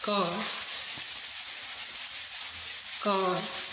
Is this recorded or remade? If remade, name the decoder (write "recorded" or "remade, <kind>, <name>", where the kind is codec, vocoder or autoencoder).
recorded